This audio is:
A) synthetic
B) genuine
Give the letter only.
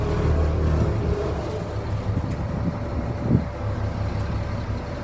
B